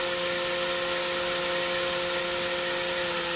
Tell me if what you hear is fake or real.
real